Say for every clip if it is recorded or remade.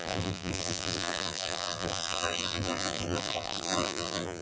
remade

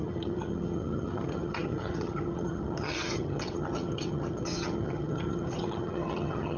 remade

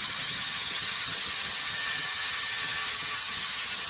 remade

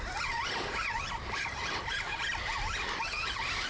recorded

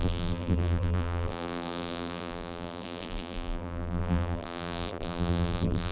remade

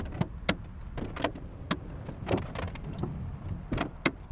recorded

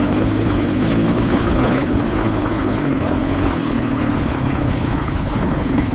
remade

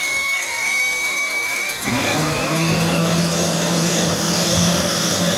remade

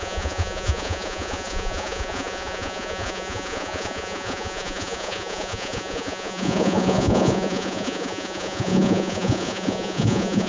remade